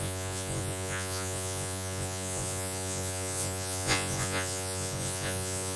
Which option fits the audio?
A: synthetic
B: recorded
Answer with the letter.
A